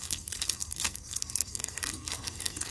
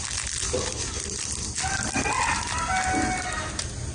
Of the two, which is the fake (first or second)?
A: first